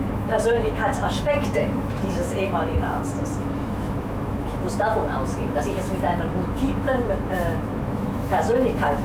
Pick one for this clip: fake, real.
fake